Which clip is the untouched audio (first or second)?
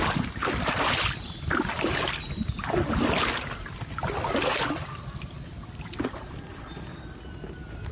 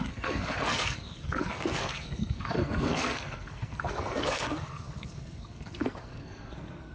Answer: first